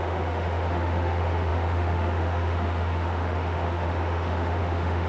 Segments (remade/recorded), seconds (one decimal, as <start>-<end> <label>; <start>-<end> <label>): 0.0-5.1 remade